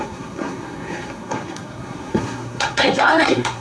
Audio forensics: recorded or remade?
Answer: remade